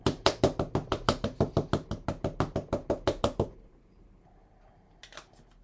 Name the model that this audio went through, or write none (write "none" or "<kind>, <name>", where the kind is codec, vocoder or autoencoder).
none